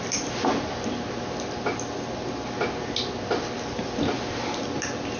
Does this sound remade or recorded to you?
recorded